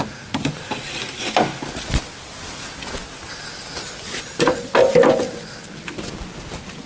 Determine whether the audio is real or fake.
real